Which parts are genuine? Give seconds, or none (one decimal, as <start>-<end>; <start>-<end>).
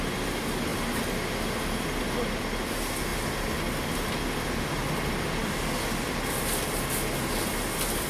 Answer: 0.0-8.1